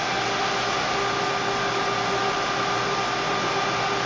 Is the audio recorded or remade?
recorded